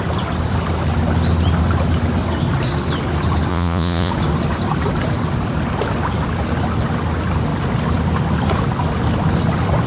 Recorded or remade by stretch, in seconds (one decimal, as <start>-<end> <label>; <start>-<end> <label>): 0.0-3.5 recorded; 3.5-4.1 remade; 4.1-9.9 recorded